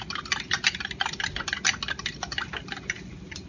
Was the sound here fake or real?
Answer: real